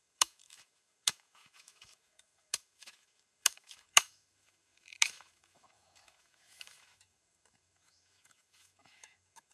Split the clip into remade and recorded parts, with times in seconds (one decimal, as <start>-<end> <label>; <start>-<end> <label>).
0.0-9.5 remade